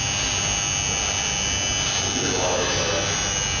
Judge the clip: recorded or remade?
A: recorded